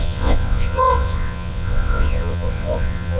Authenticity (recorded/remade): remade